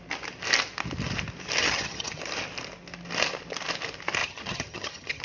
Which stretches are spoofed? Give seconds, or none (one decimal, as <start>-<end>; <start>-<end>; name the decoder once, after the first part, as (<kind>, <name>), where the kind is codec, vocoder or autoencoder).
1.6-2.2 (vocoder, HiFi-GAN); 4.2-5.2